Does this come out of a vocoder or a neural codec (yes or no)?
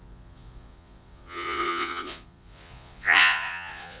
yes